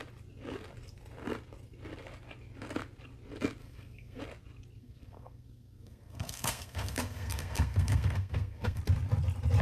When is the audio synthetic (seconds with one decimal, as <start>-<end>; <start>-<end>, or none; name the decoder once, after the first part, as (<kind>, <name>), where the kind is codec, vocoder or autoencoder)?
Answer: 3.6-4.2 (codec, SNAC); 4.8-8.8

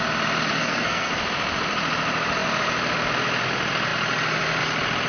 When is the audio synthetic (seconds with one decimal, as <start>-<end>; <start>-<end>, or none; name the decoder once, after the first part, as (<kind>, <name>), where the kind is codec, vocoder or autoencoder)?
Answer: 0.5-1.1 (codec, SNAC)

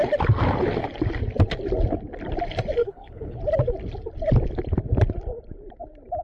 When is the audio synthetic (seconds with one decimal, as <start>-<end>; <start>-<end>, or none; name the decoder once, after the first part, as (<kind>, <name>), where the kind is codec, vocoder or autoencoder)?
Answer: 2.8-3.4 (codec, HILCodec)

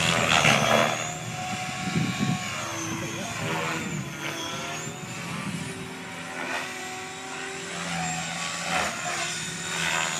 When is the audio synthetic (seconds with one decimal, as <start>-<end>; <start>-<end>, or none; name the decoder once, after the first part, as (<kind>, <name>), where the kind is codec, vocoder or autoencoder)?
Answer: none

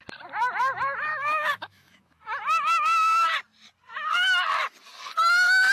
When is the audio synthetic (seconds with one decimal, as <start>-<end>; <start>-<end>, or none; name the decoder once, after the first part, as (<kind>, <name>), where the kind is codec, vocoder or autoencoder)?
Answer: 1.1-2.2 (autoencoder, DAC-VAE)

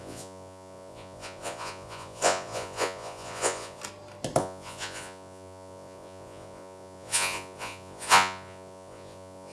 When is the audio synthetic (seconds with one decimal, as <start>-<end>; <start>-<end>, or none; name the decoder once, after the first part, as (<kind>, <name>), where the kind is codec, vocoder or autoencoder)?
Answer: 0.0-3.8 (vocoder, Vocos); 4.4-9.5